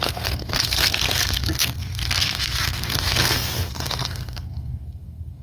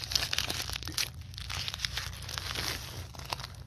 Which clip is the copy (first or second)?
first